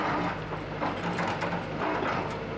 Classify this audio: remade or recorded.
recorded